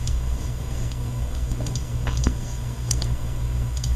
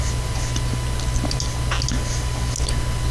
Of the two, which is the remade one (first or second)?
first